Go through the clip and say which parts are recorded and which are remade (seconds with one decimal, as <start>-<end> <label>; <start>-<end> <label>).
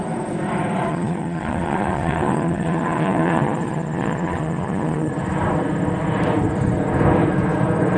0.0-0.9 recorded; 0.9-5.1 remade; 5.1-8.0 recorded